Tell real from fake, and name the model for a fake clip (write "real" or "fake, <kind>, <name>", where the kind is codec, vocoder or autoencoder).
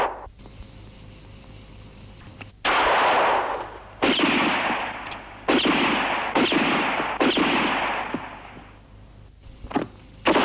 real